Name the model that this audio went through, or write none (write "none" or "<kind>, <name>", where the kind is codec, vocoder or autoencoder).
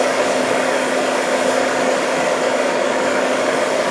codec, DAC